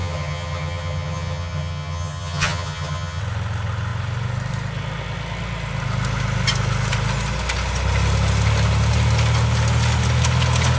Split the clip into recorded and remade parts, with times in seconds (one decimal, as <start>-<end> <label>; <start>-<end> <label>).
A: 0.0-3.2 remade; 3.2-10.8 recorded